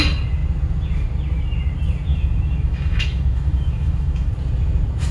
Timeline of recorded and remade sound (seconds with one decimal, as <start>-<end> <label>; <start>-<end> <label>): 0.0-2.1 recorded; 2.1-4.3 remade; 4.3-5.1 recorded